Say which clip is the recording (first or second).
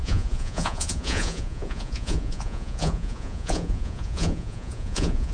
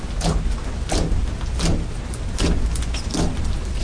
second